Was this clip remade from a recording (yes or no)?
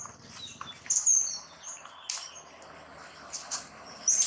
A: no